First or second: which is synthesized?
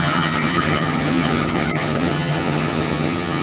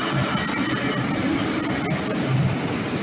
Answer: first